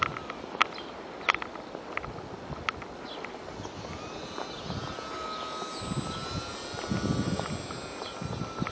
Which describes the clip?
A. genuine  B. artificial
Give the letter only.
A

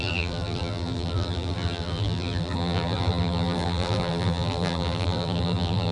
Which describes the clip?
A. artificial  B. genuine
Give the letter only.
A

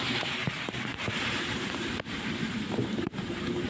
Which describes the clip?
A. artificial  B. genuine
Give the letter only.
A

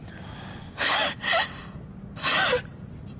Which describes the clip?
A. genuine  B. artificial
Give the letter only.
B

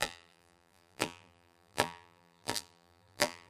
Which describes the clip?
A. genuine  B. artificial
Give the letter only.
B